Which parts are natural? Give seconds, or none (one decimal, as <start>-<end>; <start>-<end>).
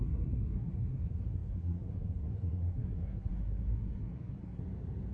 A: 4.6-5.1